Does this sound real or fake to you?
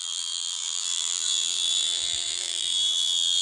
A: fake